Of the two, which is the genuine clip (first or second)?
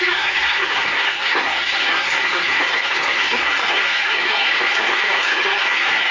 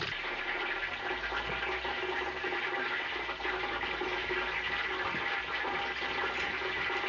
second